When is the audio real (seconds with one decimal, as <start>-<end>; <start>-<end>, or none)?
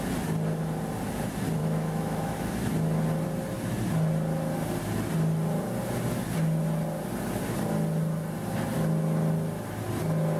0.0-1.6; 2.5-10.4